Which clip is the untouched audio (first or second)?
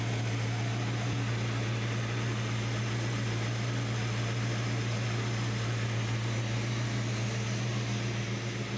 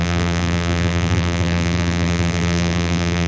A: first